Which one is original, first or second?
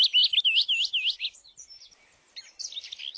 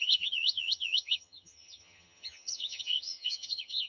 first